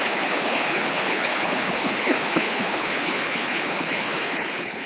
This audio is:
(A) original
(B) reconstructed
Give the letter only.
B